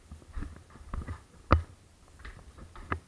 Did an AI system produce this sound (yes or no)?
no